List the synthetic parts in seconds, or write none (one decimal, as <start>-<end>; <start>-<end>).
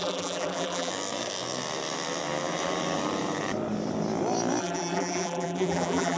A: 0.0-0.9; 4.6-6.2